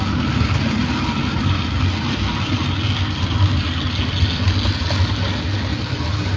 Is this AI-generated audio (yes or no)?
no